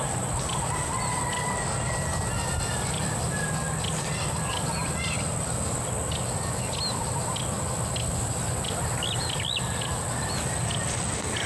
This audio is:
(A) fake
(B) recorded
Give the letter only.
B